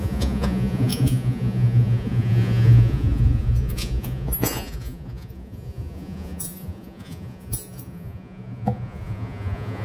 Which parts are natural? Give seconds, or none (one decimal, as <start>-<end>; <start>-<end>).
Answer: none